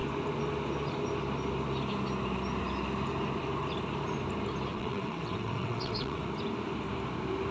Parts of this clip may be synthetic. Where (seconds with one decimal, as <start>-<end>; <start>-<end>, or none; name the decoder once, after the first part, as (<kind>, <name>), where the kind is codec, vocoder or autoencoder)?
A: 4.7-6.2 (vocoder, WaveNeXt)